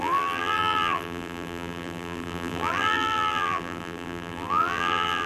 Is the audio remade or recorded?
remade